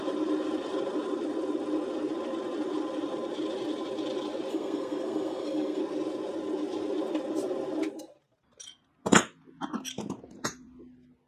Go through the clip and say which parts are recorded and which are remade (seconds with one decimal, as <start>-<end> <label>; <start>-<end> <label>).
0.0-4.5 recorded; 4.5-5.8 remade; 5.8-11.3 recorded